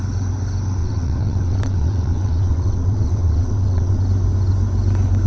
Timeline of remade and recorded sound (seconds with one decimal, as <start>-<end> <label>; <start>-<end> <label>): 0.0-0.8 recorded; 0.8-4.0 remade; 4.0-5.3 recorded